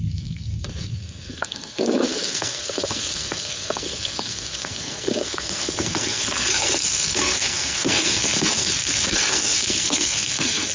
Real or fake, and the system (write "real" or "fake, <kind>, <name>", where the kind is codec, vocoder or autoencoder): fake, codec, SNAC